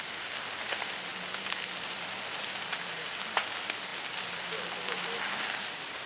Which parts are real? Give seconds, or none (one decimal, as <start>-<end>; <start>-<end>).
0.0-6.1